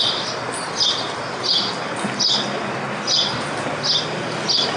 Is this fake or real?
real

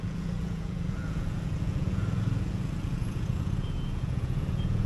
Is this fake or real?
fake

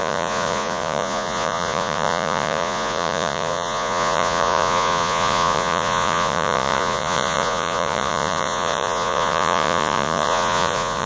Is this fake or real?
fake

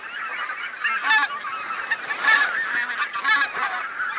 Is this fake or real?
real